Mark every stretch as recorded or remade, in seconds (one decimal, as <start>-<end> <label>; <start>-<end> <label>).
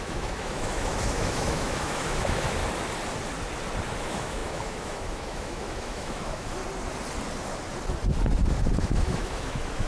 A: 0.0-2.6 remade; 2.6-4.0 recorded; 4.0-6.6 remade; 6.6-8.8 recorded; 8.8-9.9 remade